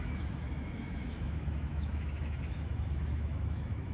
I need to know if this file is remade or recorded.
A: remade